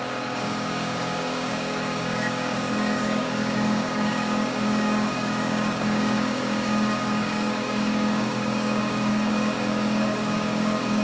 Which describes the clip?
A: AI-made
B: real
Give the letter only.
A